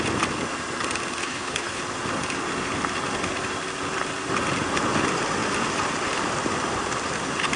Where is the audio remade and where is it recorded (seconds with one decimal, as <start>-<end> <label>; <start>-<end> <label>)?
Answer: 0.0-1.2 recorded; 1.2-1.8 remade; 1.8-7.6 recorded